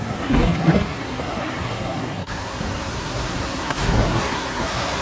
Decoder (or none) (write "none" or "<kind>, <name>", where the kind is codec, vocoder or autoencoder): codec, SNAC